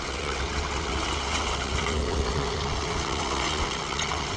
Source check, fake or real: fake